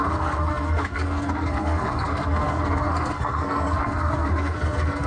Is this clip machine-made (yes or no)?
yes